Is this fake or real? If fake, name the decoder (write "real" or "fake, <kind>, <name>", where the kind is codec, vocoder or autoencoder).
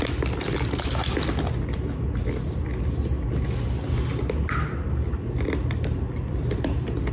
real